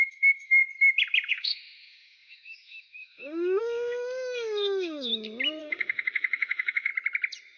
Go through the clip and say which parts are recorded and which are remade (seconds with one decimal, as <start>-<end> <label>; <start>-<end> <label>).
0.0-0.6 remade; 0.6-1.3 recorded; 1.3-5.1 remade; 5.1-5.6 recorded; 5.6-6.9 remade; 6.9-7.6 recorded